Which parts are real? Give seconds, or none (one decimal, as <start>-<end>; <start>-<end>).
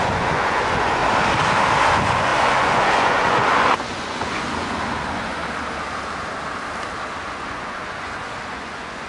1.0-1.9; 5.4-7.2